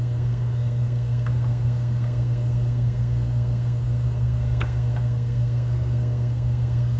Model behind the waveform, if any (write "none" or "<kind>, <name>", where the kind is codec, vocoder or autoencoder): codec, SNAC